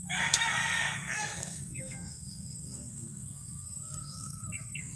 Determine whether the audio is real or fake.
fake